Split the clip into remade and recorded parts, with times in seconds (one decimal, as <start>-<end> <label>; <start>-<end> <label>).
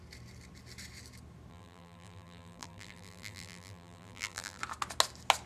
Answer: 0.0-1.5 recorded; 1.5-4.6 remade; 4.6-5.5 recorded